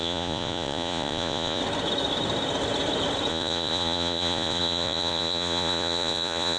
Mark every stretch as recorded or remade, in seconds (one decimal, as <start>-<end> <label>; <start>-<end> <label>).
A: 0.0-1.6 remade; 1.6-3.3 recorded; 3.3-6.6 remade